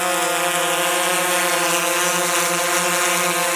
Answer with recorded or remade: recorded